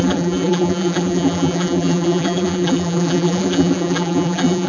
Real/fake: fake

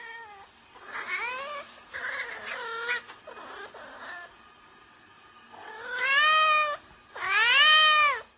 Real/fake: real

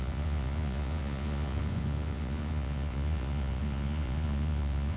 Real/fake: fake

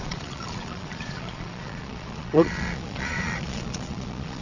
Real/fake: fake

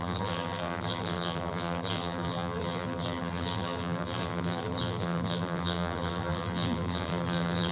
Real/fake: fake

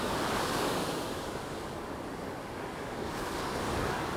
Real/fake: fake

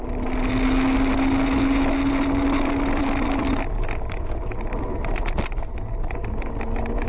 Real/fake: real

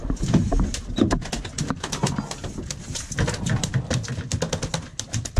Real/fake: real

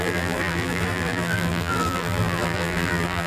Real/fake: fake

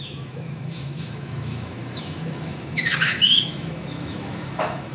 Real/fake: fake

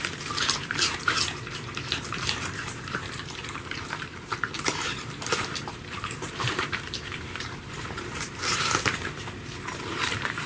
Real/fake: fake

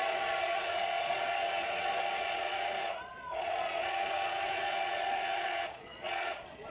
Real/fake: fake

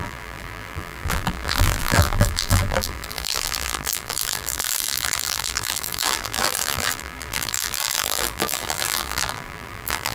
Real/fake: fake